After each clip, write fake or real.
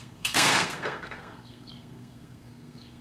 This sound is fake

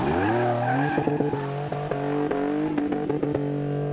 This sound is real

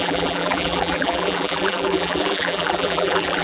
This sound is fake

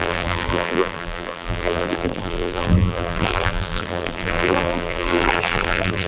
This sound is fake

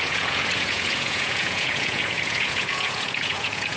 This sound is fake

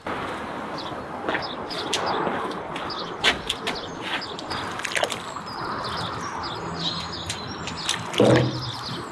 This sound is real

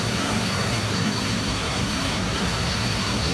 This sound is fake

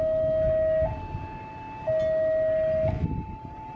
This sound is real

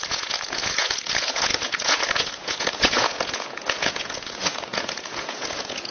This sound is fake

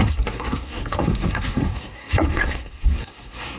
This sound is fake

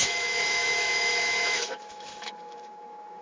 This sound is fake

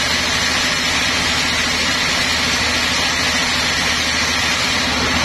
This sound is real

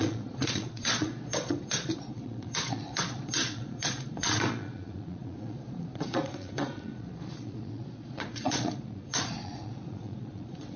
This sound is fake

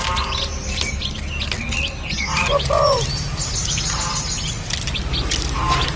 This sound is real